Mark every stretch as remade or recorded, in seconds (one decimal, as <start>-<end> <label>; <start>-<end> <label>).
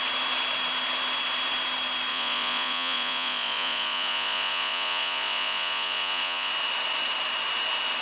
0.0-2.1 recorded; 2.1-6.5 remade; 6.5-8.0 recorded